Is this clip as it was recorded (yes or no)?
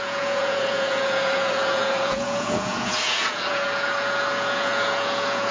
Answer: no